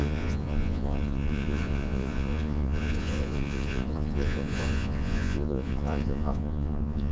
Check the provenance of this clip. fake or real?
fake